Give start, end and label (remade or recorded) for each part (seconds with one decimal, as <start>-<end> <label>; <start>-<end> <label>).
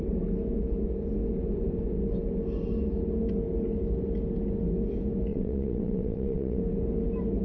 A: 0.0-5.3 recorded; 5.3-6.6 remade; 6.6-7.4 recorded